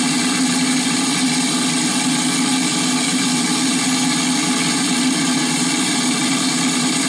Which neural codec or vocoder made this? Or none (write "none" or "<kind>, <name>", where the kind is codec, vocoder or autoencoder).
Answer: none